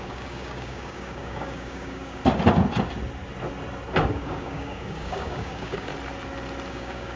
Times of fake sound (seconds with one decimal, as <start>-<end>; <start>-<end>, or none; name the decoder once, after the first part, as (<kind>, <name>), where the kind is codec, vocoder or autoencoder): 0.0-2.2 (codec, DAC); 4.1-5.9; 6.7-7.2

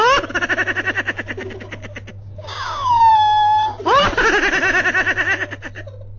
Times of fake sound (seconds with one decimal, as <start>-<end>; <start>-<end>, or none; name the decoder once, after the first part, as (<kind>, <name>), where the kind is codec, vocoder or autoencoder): 2.1-3.1 (codec, DAC)